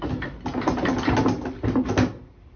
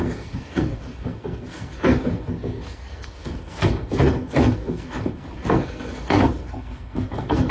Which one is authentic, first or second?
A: first